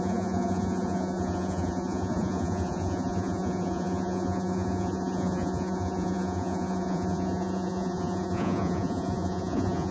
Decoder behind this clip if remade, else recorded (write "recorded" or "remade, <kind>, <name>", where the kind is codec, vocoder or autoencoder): remade, vocoder, Vocos